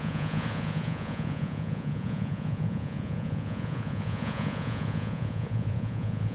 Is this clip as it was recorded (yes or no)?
no